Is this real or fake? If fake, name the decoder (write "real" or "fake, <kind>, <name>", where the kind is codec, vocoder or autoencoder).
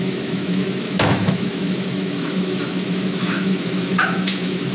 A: fake, autoencoder, DAC-VAE